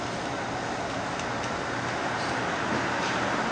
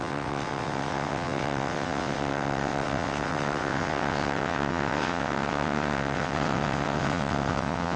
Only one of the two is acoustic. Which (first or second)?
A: first